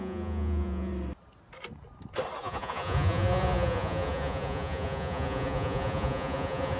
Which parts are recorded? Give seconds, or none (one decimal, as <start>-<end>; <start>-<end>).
0.9-2.4